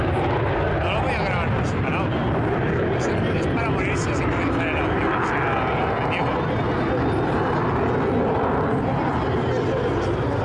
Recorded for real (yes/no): yes